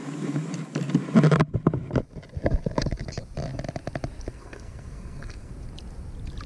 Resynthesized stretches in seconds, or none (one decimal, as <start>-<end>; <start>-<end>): 4.3-5.5